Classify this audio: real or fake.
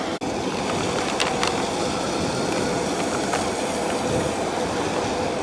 real